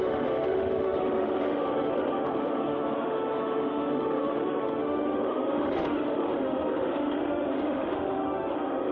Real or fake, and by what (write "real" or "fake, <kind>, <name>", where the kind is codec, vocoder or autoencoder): fake, autoencoder, DAC-VAE